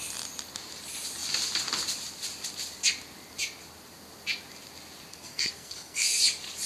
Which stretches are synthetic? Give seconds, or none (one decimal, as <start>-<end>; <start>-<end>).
5.1-6.2